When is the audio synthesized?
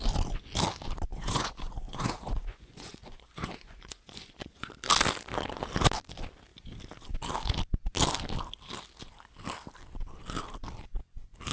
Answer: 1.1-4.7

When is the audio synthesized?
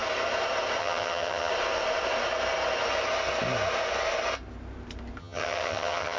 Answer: 0.8-1.5; 5.2-6.2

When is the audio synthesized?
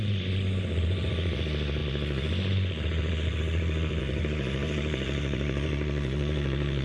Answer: 0.0-6.8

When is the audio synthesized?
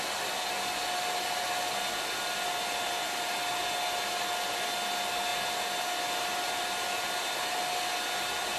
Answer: none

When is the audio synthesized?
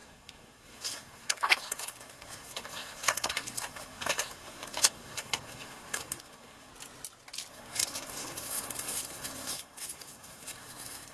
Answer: 0.0-6.7; 7.5-11.1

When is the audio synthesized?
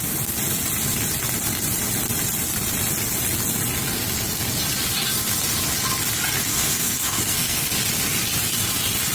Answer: 6.5-7.7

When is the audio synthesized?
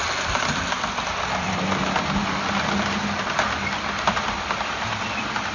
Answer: none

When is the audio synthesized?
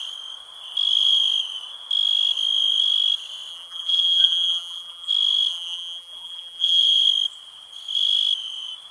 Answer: 3.5-5.1; 5.5-6.8